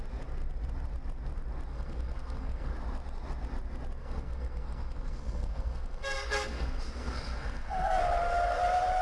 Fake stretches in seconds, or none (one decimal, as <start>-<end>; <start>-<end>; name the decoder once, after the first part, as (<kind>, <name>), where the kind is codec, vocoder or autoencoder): 1.7-2.7 (codec, SNAC); 4.0-8.0